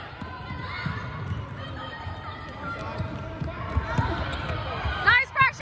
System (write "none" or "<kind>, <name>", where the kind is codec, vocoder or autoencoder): none